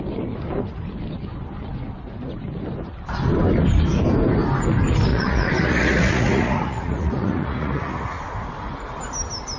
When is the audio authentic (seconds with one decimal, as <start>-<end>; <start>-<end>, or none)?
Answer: 0.0-5.1; 8.2-9.6